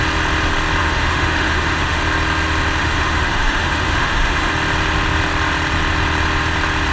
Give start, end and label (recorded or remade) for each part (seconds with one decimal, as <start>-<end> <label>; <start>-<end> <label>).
0.0-0.8 recorded; 0.8-2.0 remade; 2.0-2.8 recorded; 2.8-4.5 remade; 4.5-6.9 recorded